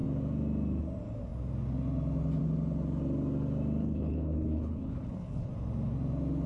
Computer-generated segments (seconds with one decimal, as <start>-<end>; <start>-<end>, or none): 3.8-5.5